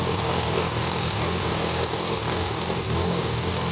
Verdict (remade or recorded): remade